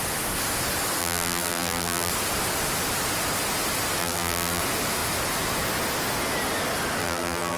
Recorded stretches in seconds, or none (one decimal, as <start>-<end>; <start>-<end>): 0.0-1.0; 2.1-4.0; 4.6-7.0